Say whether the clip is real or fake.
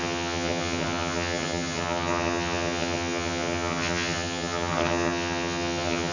fake